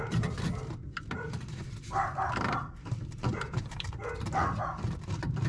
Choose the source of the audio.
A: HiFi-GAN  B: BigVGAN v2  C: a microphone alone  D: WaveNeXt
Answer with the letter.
B